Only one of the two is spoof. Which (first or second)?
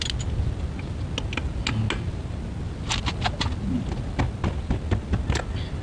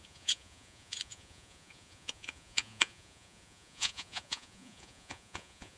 second